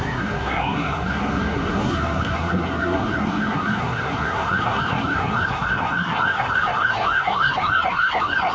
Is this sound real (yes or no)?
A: no